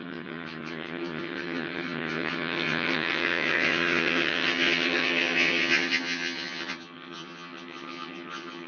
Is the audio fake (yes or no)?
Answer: yes